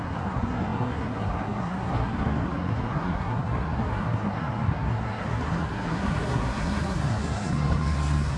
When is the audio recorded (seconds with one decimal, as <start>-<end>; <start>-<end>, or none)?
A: none